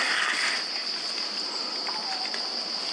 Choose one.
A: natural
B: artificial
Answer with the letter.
A